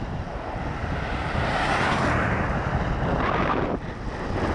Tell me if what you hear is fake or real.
real